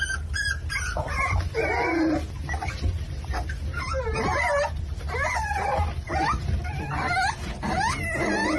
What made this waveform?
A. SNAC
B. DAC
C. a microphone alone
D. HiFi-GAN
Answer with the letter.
C